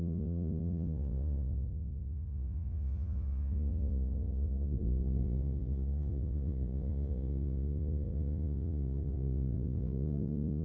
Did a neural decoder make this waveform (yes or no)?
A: yes